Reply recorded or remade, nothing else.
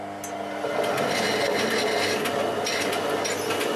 recorded